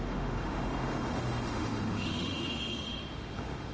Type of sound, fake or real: fake